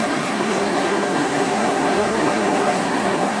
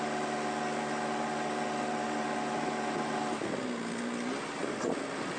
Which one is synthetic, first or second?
first